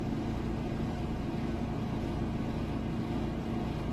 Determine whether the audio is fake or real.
real